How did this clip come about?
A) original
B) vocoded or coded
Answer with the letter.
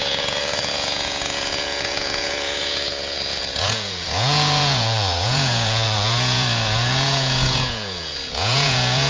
B